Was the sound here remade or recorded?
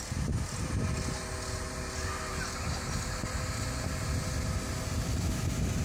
recorded